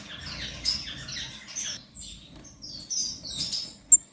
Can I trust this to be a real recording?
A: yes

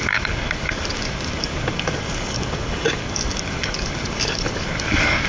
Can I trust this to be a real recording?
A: no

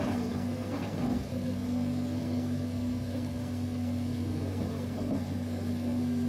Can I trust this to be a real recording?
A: no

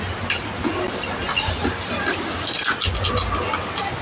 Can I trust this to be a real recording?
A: yes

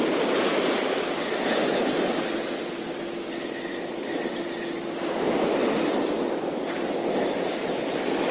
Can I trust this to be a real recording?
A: yes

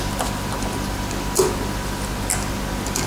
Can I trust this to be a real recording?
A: yes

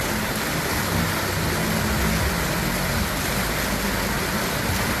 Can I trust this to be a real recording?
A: yes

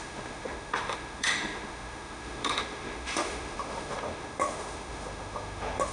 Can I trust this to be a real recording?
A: no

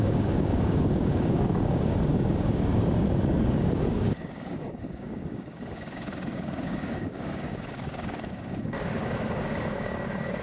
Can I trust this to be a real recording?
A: no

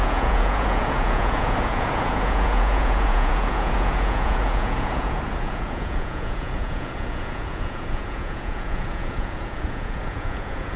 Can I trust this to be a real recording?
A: no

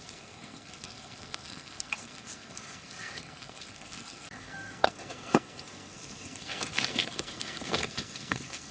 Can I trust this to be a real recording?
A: no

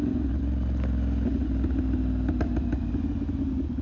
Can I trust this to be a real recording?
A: yes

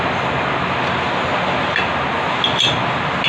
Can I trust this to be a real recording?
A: yes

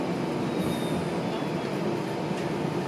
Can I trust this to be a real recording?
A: yes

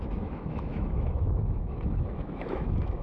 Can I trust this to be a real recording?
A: no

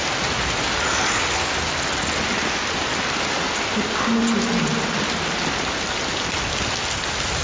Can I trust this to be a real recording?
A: yes